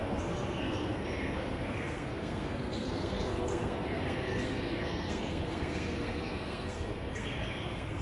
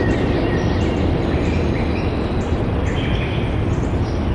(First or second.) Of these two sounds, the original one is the second